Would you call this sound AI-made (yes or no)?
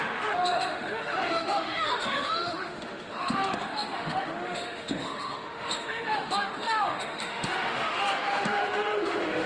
yes